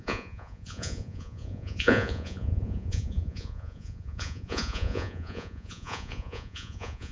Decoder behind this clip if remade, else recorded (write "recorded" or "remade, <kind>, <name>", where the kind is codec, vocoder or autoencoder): remade, vocoder, Vocos